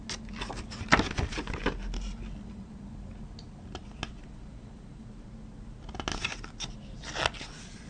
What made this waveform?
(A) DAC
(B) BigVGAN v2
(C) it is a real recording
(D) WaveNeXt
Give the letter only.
C